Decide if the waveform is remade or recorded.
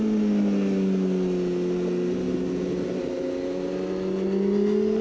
recorded